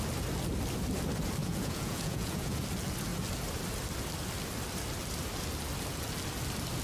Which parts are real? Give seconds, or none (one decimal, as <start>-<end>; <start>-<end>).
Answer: 0.0-1.4; 2.6-6.8